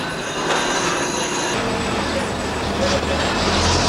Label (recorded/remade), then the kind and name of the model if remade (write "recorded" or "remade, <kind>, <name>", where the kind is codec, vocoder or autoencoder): recorded